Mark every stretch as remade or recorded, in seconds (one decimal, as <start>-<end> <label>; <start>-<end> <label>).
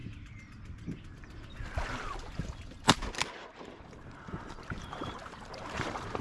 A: 0.0-3.5 recorded; 3.5-6.2 remade